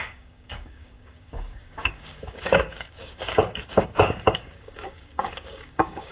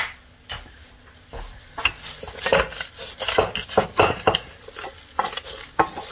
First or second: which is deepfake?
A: first